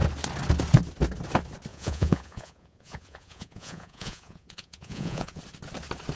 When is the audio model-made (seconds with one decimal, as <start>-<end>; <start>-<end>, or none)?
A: 1.7-5.4